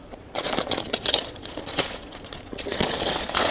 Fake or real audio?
fake